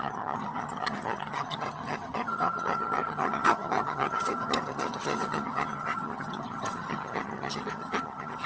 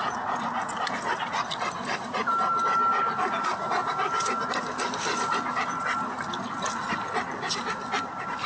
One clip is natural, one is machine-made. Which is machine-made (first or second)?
first